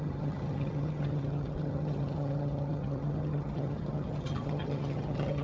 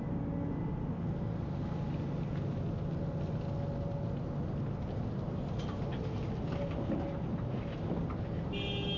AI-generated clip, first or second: first